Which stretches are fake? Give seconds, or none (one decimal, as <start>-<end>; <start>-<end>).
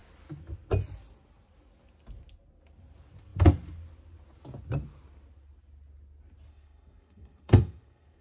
6.5-8.2